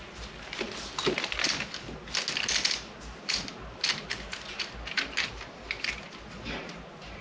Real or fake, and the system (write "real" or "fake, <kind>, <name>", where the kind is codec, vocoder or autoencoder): real